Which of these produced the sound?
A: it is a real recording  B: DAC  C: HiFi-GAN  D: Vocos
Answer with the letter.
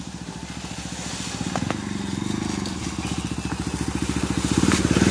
A